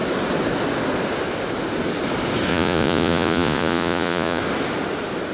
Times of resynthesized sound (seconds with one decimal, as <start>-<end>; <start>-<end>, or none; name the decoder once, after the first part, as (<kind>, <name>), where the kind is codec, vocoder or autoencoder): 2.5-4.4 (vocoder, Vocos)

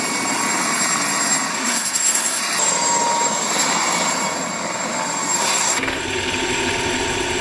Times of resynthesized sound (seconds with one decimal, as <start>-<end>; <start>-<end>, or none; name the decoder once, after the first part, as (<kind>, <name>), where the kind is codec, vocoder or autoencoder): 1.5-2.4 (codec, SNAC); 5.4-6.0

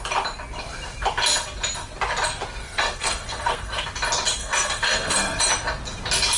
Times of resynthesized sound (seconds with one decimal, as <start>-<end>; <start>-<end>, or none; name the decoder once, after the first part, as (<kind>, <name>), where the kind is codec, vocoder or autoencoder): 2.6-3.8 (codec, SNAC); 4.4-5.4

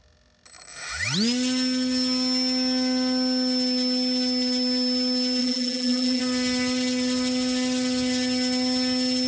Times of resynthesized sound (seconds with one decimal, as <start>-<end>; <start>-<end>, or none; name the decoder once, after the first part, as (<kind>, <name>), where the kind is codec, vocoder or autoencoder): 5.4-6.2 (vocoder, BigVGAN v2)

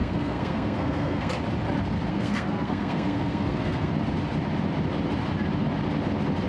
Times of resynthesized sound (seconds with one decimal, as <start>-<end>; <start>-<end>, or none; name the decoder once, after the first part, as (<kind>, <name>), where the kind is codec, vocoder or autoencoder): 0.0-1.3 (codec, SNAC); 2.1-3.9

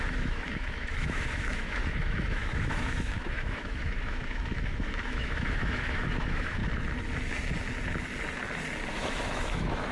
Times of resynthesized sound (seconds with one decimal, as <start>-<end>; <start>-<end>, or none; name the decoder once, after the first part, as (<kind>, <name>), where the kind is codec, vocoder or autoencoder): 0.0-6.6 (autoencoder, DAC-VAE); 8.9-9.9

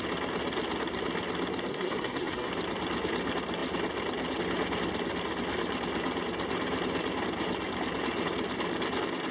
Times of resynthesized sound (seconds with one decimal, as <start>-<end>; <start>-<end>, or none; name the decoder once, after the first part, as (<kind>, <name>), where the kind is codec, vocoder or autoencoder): 1.7-2.5 (codec, SNAC)

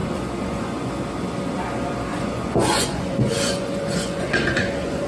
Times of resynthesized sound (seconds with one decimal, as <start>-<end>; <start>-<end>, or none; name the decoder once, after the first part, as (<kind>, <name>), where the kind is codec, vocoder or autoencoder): 0.0-0.9 (vocoder, Vocos); 2.1-5.1